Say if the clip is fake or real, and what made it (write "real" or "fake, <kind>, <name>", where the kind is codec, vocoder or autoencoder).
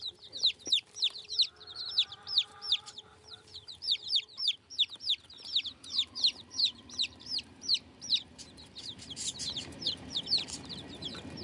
fake, vocoder, BigVGAN v2